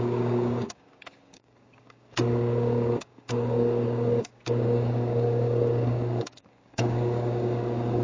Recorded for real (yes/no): no